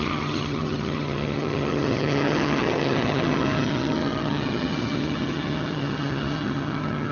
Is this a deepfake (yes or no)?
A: yes